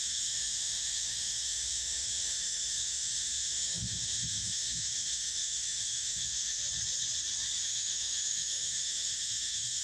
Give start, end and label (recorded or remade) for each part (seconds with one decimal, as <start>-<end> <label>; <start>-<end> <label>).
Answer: 0.0-6.6 remade; 6.6-7.6 recorded; 7.6-9.8 remade